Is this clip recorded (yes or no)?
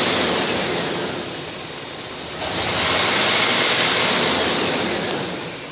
yes